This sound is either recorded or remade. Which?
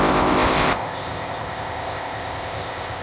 remade